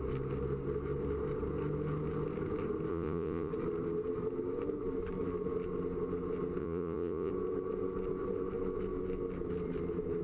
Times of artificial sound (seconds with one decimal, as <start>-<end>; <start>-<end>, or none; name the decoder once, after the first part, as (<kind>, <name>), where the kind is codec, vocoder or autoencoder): 2.9-3.5 (vocoder, Vocos); 6.6-7.3